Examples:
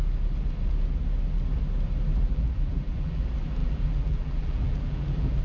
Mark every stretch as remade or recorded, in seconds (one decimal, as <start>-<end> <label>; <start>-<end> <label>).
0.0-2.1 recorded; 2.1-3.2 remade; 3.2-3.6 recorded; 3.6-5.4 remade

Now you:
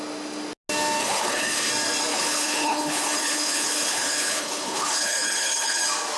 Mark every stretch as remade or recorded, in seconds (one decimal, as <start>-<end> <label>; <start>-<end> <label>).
0.0-1.0 recorded; 1.0-1.7 remade; 1.7-2.1 recorded; 2.1-5.8 remade; 5.8-6.2 recorded

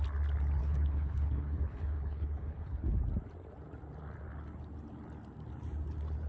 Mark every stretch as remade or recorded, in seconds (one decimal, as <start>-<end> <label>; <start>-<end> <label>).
0.0-0.6 recorded; 0.6-3.0 remade; 3.0-6.3 recorded

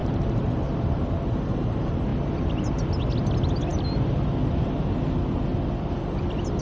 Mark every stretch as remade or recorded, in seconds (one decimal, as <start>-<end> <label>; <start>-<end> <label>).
0.0-6.6 recorded

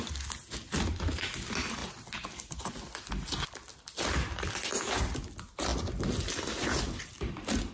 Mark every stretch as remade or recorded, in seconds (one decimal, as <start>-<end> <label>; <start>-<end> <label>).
0.0-7.7 recorded